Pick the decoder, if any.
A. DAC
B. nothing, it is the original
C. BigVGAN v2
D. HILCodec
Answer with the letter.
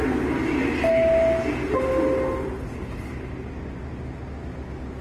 B